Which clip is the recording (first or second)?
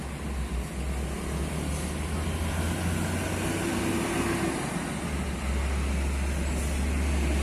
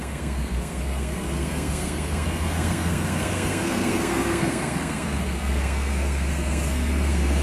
first